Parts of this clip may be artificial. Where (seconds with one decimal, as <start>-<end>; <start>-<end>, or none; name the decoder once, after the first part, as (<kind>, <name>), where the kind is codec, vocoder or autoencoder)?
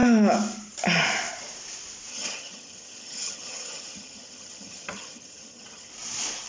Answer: 2.1-5.9 (vocoder, HiFi-GAN)